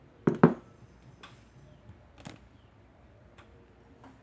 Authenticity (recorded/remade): recorded